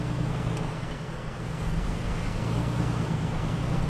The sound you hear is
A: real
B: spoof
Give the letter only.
B